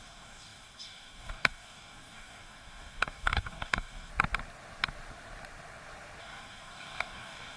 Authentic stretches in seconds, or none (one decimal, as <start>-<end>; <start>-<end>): 4.1-6.2